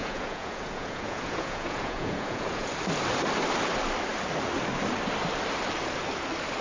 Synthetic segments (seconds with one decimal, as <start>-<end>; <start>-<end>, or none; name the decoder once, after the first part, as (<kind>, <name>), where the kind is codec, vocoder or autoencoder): 0.0-2.7 (vocoder, Vocos)